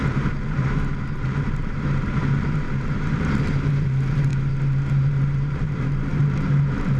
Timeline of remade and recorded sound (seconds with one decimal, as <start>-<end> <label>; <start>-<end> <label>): 0.0-4.3 remade; 4.3-4.9 recorded; 4.9-7.0 remade